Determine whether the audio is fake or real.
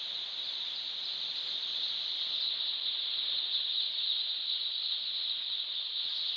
fake